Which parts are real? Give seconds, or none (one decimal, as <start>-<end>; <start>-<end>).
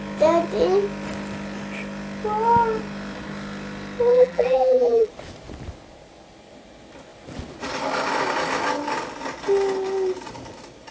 0.0-4.1; 5.1-10.9